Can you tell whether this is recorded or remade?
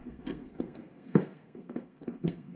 remade